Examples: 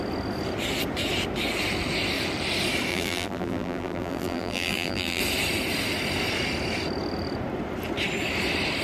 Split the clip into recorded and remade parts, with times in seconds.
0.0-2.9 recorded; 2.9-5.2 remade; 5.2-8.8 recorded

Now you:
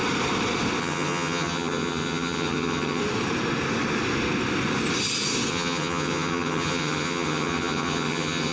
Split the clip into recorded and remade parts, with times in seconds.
0.0-0.8 recorded; 0.8-3.0 remade; 3.0-5.5 recorded; 5.5-8.5 remade

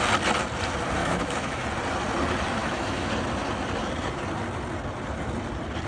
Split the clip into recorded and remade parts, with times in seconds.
0.0-1.0 recorded; 1.0-1.6 remade; 1.6-2.6 recorded; 2.6-3.1 remade; 3.1-5.9 recorded